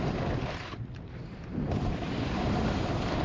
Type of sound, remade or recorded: remade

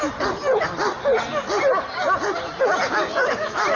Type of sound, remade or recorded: recorded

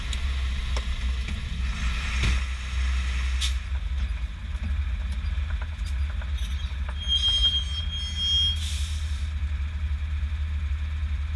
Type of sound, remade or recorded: recorded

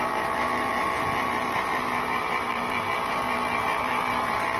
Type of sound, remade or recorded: remade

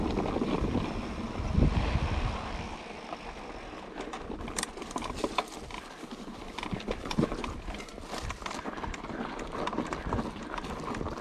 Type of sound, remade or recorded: recorded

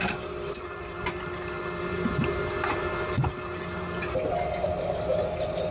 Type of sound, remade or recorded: remade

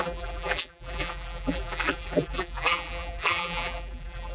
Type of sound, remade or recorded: remade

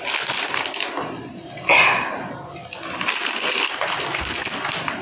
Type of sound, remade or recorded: recorded